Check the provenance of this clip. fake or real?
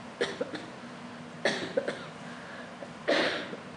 real